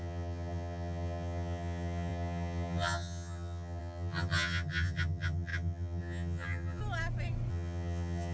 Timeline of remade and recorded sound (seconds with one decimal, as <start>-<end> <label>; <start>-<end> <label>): 0.0-6.8 remade; 6.8-7.5 recorded; 7.5-8.3 remade